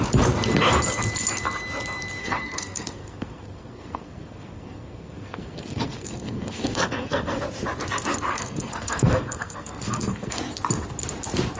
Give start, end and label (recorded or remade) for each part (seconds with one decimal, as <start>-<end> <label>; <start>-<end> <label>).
0.0-2.2 recorded; 2.2-7.4 remade; 7.4-8.3 recorded; 8.3-10.4 remade; 10.4-11.6 recorded